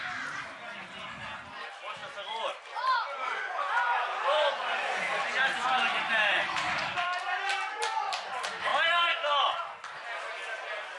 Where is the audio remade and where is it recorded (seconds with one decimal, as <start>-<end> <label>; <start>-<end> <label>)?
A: 0.0-2.0 recorded; 2.0-4.5 remade; 4.5-5.9 recorded; 5.9-7.3 remade; 7.3-11.0 recorded